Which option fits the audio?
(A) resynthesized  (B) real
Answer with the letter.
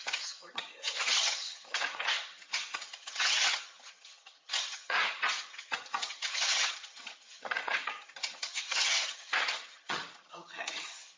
A